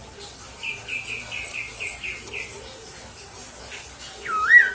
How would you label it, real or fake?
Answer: real